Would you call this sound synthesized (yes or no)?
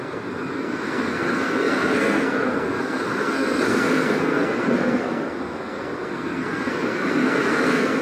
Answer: yes